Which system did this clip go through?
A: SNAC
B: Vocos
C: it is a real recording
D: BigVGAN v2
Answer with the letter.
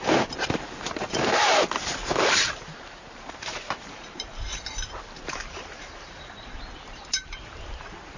D